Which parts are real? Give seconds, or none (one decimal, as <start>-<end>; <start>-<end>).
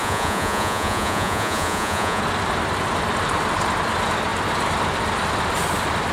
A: 2.2-6.1